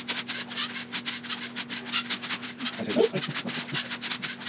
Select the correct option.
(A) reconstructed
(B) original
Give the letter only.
B